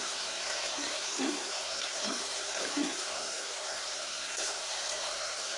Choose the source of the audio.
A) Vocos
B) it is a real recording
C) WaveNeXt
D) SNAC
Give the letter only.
D